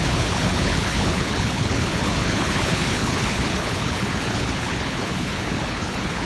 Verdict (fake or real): fake